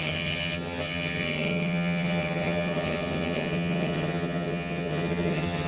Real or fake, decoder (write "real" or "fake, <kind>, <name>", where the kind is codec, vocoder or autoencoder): fake, vocoder, HiFi-GAN